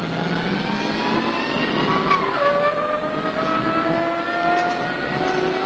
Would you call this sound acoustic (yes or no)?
yes